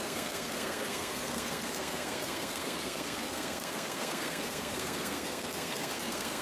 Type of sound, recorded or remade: remade